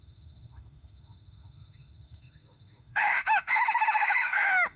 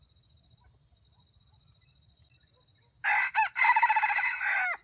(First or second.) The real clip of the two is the second